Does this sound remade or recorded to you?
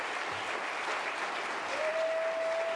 recorded